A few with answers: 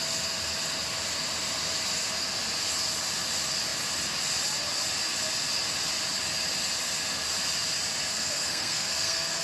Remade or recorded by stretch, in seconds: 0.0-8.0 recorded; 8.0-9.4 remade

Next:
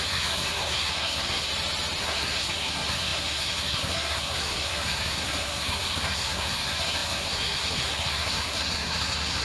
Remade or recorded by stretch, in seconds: 0.0-1.5 remade; 1.5-2.0 recorded; 2.0-9.4 remade